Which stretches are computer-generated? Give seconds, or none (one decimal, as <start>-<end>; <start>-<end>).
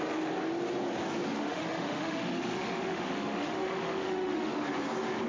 1.4-4.5